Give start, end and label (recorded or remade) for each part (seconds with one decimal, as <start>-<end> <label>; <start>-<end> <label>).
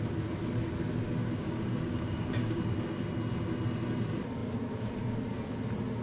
0.0-1.2 recorded; 1.2-2.6 remade; 2.6-6.0 recorded